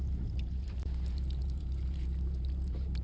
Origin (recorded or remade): remade